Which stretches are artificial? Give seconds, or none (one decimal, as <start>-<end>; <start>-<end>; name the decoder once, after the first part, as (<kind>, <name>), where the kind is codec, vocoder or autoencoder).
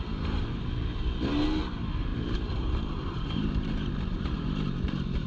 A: 2.1-5.3 (vocoder, BigVGAN v2)